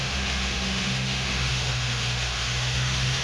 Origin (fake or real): fake